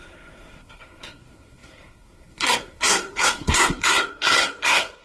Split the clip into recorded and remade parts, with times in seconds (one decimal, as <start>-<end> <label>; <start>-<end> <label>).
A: 0.0-5.0 remade